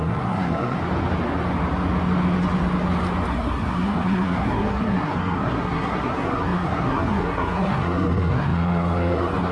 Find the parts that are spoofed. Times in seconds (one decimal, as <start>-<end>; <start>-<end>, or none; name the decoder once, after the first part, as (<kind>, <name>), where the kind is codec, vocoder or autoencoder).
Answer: 0.0-0.8 (codec, SNAC); 3.3-9.5